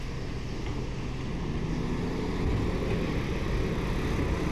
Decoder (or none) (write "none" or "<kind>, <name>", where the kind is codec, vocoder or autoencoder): none